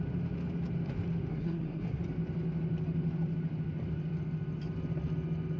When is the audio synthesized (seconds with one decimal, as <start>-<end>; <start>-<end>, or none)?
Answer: 1.3-2.0